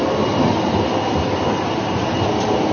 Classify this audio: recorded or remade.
recorded